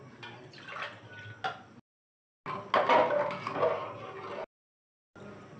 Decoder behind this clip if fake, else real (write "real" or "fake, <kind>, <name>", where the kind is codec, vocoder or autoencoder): real